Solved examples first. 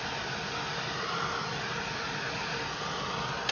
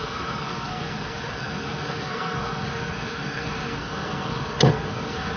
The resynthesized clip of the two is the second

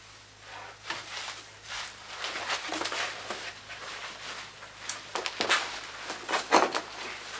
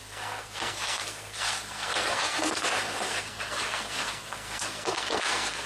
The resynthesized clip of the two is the second